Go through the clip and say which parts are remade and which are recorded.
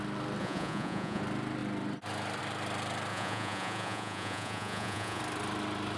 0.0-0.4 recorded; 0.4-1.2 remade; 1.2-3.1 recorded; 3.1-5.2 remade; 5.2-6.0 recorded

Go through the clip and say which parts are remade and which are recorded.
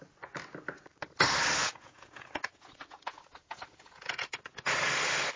0.0-1.6 recorded; 1.6-4.7 remade; 4.7-5.4 recorded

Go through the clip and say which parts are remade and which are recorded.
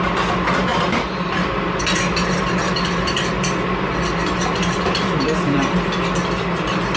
0.0-7.0 recorded